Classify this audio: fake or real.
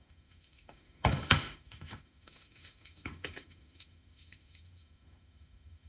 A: fake